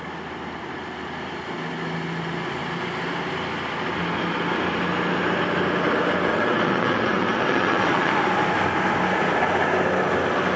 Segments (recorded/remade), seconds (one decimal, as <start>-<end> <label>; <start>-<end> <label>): 0.0-6.3 recorded; 6.3-8.1 remade; 8.1-10.6 recorded